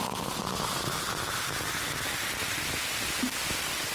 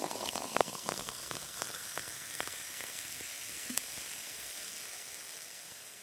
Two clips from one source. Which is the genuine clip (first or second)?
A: first